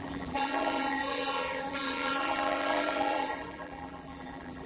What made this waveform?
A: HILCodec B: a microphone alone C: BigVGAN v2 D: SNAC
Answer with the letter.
C